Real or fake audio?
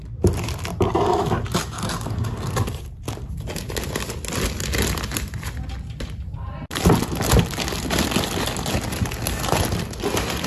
real